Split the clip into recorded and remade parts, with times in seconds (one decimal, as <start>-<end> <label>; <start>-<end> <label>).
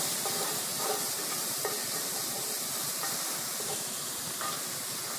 0.0-0.7 remade; 0.7-3.7 recorded; 3.7-5.2 remade